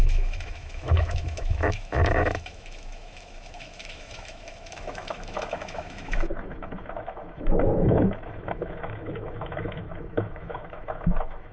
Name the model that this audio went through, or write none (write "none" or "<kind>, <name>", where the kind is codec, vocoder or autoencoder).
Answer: autoencoder, DAC-VAE